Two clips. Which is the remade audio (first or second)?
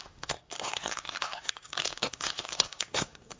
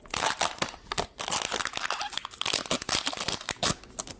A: first